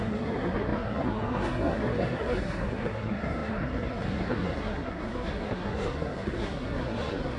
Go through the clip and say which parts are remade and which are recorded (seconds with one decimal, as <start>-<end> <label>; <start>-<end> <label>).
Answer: 0.0-7.4 remade